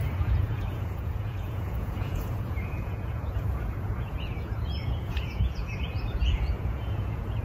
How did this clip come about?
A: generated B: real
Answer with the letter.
A